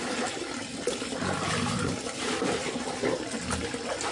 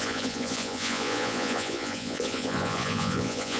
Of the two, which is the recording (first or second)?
first